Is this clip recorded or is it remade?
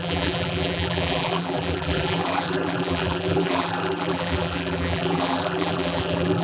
remade